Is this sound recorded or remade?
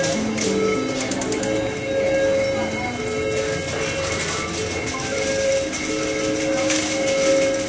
recorded